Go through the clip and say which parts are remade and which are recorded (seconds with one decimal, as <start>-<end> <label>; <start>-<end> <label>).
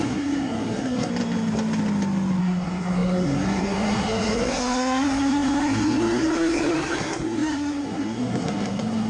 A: 0.0-1.1 remade; 1.1-2.4 recorded; 2.4-9.1 remade